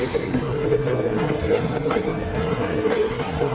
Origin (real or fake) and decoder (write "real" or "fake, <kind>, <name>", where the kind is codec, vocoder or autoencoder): fake, codec, SNAC